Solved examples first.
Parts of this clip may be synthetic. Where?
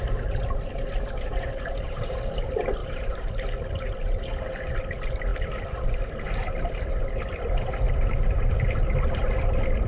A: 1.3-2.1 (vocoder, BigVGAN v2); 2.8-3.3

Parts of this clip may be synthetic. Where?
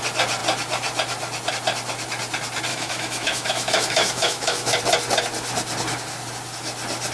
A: 2.7-4.8 (autoencoder, DAC-VAE)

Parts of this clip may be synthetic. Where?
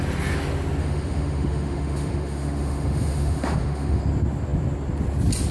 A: 0.8-4.0 (autoencoder, DAC-VAE)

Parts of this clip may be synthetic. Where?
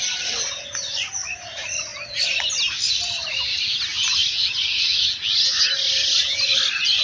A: none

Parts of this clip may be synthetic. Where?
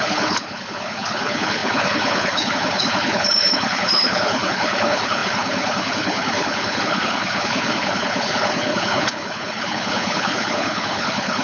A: 0.0-11.4 (codec, HILCodec)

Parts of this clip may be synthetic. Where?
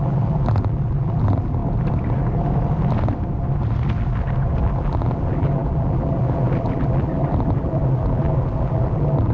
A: 0.0-1.6 (vocoder, BigVGAN v2); 4.6-9.3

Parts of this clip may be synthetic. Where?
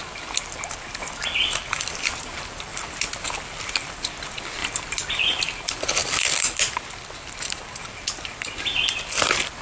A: 0.0-2.7 (vocoder, BigVGAN v2); 3.6-4.6; 5.1-6.0; 8.6-9.6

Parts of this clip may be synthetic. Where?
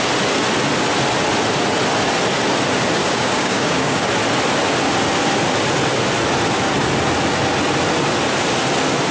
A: 3.0-4.1 (codec, DAC)